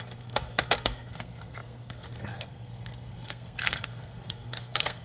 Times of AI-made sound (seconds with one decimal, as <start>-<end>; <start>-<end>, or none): 0.0-5.0